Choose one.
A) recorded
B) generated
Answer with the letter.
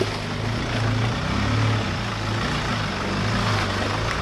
A